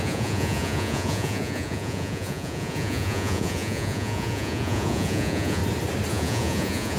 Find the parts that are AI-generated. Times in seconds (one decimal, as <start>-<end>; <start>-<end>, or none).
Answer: 0.0-5.6; 6.1-7.0